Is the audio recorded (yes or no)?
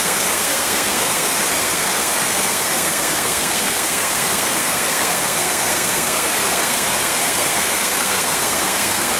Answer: no